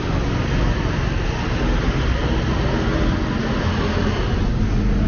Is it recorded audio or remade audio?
recorded